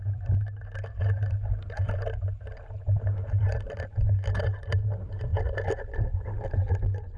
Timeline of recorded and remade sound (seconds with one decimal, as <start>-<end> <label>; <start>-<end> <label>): 0.0-7.2 recorded